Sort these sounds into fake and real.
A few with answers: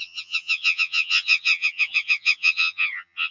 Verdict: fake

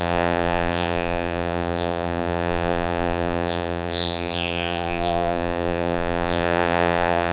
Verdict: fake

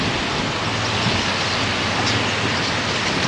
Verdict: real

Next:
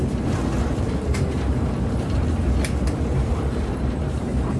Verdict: fake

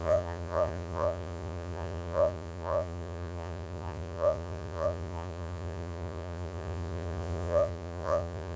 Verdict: fake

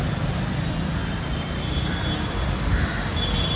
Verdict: real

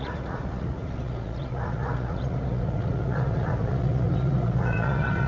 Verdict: fake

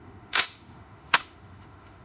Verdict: fake